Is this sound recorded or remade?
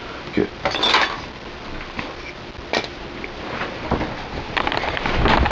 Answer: recorded